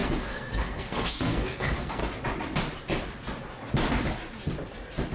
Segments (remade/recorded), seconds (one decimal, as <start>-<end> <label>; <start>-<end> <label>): 0.0-2.0 remade; 2.0-5.1 recorded